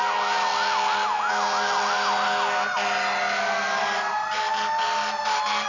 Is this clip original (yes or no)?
yes